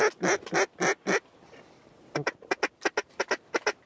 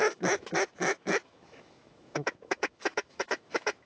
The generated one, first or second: second